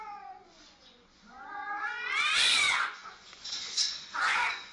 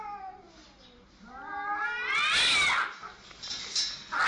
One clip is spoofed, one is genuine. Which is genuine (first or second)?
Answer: second